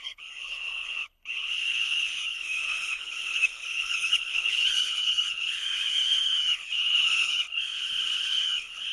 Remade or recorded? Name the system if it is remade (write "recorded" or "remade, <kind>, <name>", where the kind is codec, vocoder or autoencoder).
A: remade, codec, HILCodec